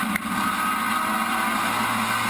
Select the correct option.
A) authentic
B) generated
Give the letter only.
A